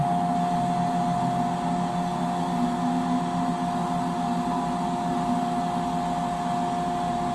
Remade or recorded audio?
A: recorded